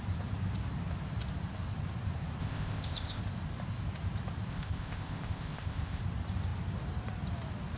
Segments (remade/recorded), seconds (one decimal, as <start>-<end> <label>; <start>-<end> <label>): 0.0-2.4 recorded; 2.4-3.2 remade; 3.2-4.5 recorded; 4.5-6.0 remade; 6.0-7.8 recorded